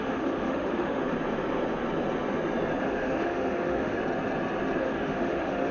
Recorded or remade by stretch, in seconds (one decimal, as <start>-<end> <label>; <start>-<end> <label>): 0.0-1.0 remade; 1.0-2.8 recorded; 2.8-4.0 remade; 4.0-4.8 recorded; 4.8-5.7 remade